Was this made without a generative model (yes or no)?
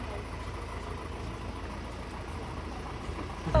yes